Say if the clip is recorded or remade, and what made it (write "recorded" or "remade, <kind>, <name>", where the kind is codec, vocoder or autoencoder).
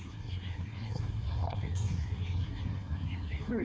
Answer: remade, codec, SNAC